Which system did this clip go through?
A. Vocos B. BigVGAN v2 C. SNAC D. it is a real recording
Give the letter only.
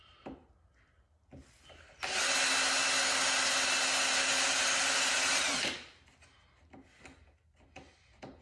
D